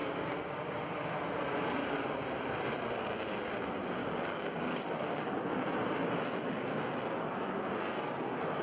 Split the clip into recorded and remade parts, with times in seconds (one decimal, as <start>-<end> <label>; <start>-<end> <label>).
0.0-0.8 remade; 0.8-4.0 recorded; 4.0-5.3 remade; 5.3-8.6 recorded